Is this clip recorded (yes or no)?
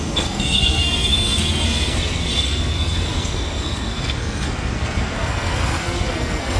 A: no